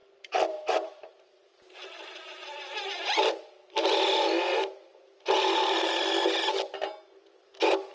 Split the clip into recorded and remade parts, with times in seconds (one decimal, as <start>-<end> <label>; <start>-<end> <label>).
0.0-7.9 recorded